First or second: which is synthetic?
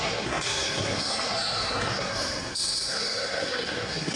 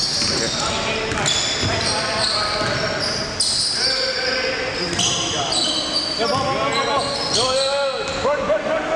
first